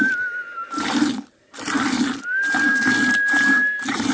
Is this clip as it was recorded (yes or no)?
yes